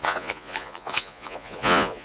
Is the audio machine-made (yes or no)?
yes